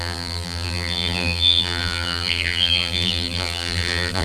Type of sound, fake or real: fake